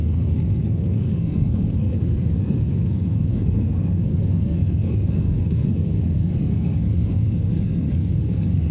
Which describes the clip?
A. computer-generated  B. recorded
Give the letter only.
A